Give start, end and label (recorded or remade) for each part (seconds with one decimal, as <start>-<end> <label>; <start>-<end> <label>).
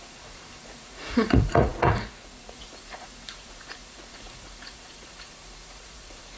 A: 0.0-6.4 remade